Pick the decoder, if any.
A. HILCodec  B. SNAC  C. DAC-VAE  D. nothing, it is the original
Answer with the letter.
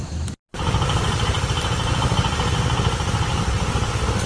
D